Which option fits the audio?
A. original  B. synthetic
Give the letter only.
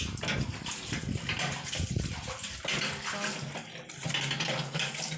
A